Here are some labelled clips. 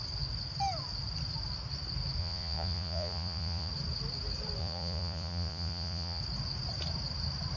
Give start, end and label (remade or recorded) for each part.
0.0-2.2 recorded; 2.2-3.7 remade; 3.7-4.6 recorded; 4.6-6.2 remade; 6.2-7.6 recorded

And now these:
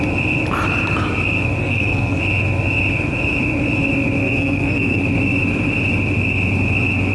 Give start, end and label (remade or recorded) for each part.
0.0-1.6 recorded; 1.6-2.2 remade; 2.2-4.2 recorded; 4.2-5.0 remade; 5.0-7.1 recorded